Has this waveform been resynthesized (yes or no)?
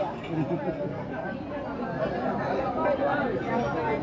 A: no